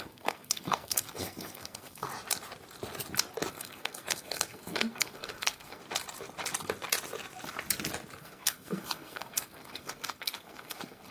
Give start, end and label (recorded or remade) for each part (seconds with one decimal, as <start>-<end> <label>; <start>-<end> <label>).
0.0-2.1 remade; 2.1-3.5 recorded; 3.5-5.8 remade; 5.8-8.2 recorded; 8.2-11.1 remade